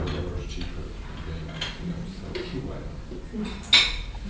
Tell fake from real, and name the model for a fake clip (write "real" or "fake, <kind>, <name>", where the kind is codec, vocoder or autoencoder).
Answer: real